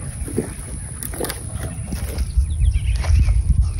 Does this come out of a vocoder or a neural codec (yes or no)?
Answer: no